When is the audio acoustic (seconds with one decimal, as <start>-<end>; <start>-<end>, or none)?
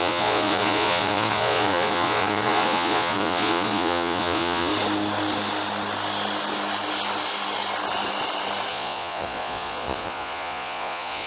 4.7-8.7